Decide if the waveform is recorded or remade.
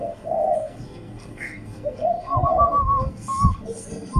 remade